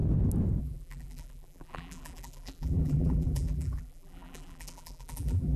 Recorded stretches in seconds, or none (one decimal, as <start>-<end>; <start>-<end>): 0.0-0.6